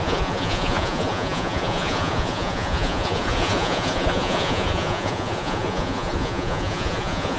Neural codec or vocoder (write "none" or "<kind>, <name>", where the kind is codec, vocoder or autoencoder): vocoder, Vocos